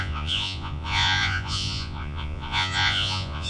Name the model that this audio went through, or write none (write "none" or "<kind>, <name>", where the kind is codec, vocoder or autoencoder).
vocoder, Vocos